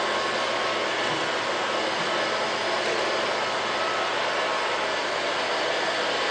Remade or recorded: recorded